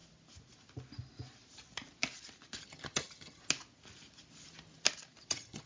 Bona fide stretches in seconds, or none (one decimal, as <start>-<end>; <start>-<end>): 0.0-2.6; 3.4-5.3